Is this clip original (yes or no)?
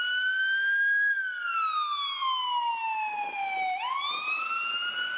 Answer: yes